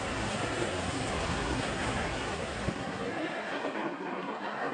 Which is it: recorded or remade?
remade